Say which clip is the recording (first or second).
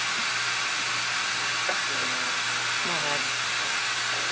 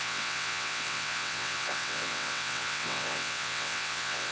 first